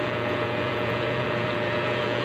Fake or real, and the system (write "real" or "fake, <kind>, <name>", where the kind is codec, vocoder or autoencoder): fake, vocoder, Vocos